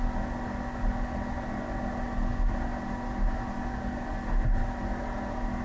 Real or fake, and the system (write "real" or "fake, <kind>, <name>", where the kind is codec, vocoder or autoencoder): real